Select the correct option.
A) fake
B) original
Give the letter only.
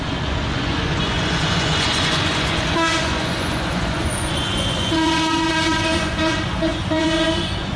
A